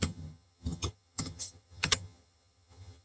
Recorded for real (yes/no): no